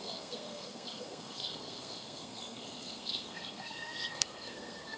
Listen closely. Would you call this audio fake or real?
fake